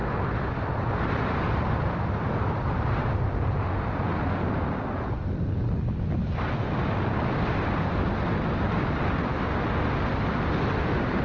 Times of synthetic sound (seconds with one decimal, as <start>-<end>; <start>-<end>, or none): 0.0-3.0